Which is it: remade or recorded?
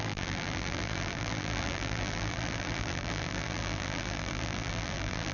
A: remade